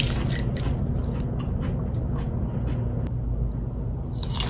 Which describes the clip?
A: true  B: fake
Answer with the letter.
A